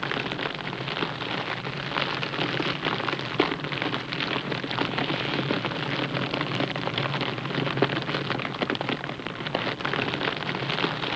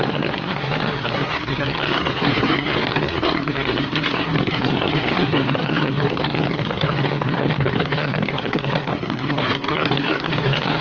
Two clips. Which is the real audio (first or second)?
first